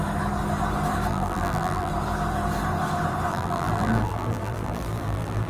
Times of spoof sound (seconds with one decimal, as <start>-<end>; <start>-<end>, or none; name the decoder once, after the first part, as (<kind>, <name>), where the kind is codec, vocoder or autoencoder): 1.1-1.9 (vocoder, BigVGAN v2); 3.3-5.5